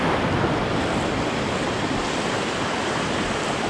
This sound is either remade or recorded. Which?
recorded